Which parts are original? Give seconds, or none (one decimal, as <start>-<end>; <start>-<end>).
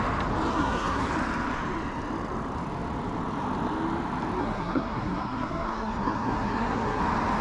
0.0-0.5; 1.1-4.4; 7.0-7.4